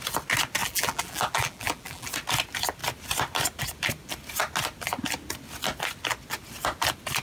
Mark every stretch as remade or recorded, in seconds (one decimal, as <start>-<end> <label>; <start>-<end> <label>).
0.0-0.6 recorded; 0.6-2.1 remade; 2.1-7.2 recorded